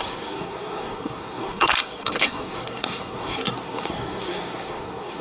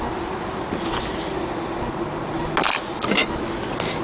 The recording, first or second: second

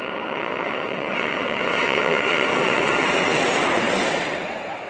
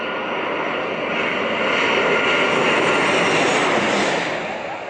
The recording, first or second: second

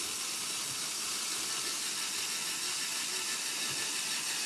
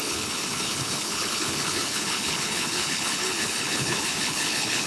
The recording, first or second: first